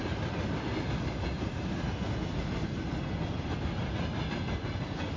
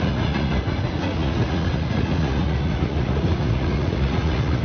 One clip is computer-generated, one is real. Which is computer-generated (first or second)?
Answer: second